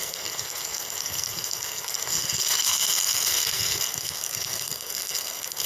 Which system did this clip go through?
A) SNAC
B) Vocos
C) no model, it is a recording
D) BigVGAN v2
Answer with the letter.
A